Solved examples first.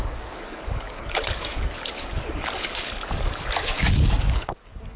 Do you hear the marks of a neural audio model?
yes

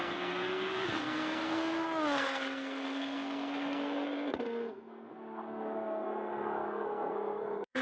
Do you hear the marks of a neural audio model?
yes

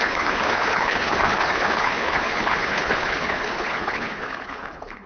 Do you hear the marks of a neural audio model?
yes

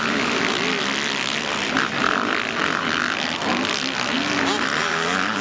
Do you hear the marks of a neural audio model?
no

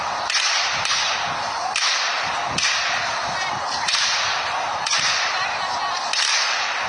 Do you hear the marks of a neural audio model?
no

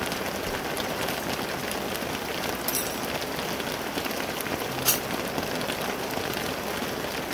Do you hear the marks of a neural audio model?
no